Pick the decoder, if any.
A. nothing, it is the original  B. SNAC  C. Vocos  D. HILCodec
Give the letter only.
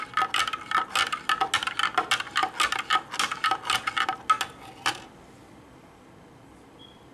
A